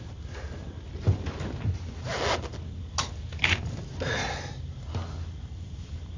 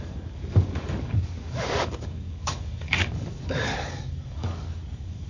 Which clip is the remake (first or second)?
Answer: second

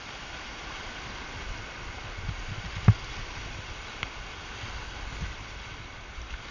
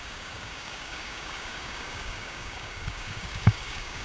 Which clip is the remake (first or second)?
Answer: second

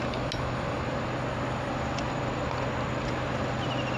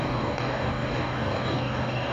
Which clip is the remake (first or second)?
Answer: second